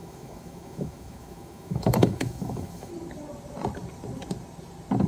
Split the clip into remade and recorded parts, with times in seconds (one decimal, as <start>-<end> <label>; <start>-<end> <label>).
0.0-2.9 remade; 2.9-5.1 recorded